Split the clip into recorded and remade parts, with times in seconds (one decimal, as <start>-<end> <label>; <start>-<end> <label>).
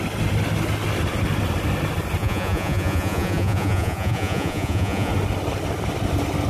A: 0.0-2.2 recorded; 2.2-5.1 remade; 5.1-6.5 recorded